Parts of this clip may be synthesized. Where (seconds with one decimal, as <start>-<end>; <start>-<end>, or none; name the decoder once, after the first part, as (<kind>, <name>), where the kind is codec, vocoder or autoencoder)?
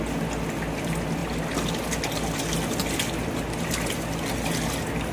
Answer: none